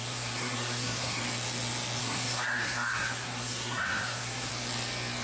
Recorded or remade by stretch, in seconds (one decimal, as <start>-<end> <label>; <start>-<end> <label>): 0.0-1.2 remade; 1.2-2.0 recorded; 2.0-4.5 remade; 4.5-5.2 recorded